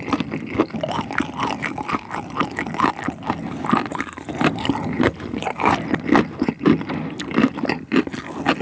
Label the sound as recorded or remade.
recorded